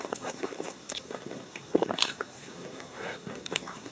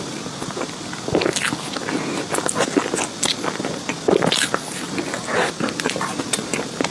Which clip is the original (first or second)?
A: second